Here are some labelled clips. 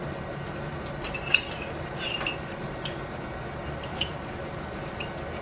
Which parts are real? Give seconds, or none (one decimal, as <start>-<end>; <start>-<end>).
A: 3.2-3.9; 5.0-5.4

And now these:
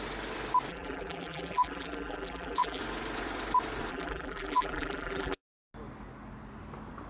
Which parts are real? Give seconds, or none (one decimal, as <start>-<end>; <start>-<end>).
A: 0.0-0.7; 2.8-3.9; 5.4-7.1

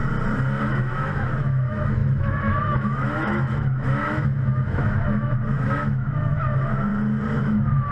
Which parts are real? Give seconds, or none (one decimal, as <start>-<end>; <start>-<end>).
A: 0.0-0.6; 6.9-7.4